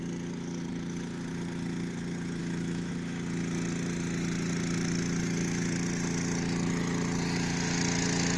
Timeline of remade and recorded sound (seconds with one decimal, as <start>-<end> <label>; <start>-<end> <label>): 0.0-2.4 recorded; 2.4-2.9 remade; 2.9-8.4 recorded